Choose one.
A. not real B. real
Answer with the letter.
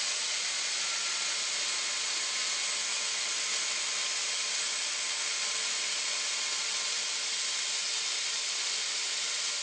B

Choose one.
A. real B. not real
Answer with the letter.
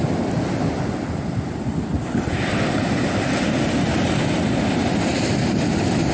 A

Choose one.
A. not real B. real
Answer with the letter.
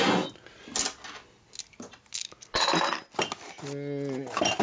B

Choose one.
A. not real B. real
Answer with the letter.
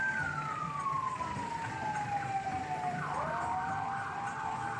B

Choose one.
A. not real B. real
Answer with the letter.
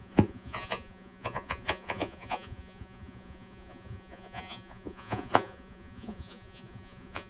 A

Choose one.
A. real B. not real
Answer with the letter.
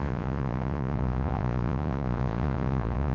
B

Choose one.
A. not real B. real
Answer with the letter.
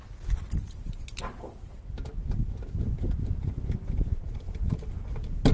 B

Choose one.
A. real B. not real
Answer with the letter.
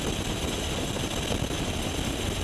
A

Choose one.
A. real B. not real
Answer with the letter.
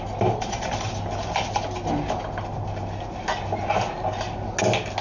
A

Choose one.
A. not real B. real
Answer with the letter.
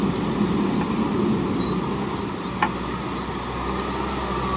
B